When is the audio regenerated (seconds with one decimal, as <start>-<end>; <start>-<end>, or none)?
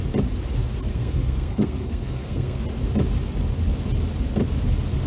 0.9-2.6